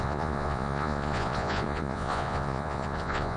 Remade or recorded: remade